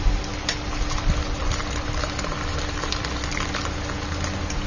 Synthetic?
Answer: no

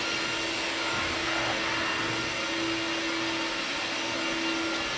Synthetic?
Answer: no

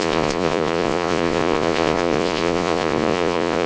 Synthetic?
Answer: yes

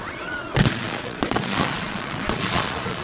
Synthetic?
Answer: yes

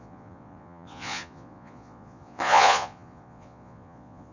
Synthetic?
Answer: yes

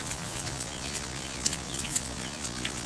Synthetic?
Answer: yes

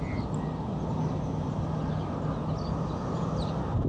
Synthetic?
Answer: no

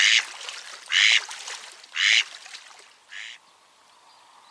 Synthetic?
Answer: no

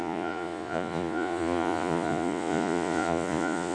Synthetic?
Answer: yes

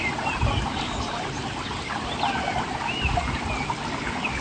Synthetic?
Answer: no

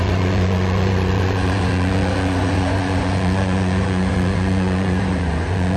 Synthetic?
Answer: yes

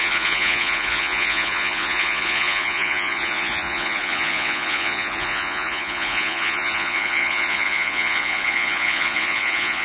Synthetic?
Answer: yes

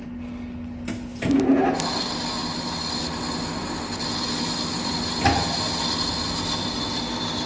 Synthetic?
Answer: no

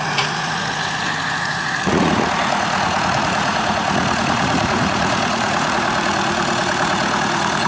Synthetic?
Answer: yes